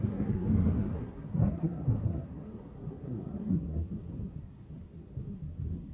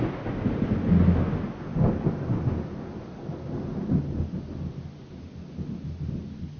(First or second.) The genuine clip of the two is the second